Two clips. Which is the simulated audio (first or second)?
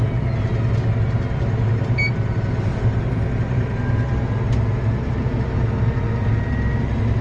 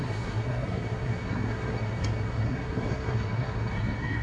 second